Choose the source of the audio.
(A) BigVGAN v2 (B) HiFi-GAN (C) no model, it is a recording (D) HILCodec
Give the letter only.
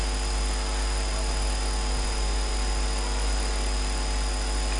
C